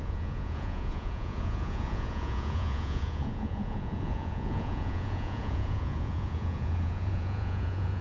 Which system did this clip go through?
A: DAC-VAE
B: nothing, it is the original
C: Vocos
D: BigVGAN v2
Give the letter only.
C